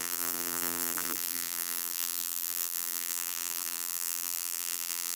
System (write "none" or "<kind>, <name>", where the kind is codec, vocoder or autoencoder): vocoder, BigVGAN v2